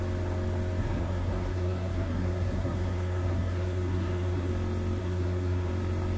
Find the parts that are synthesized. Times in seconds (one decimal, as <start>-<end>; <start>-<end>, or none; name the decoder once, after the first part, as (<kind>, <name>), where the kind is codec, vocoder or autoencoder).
0.8-4.5 (codec, SNAC); 5.0-5.7